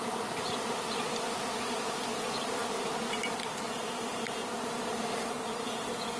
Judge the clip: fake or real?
real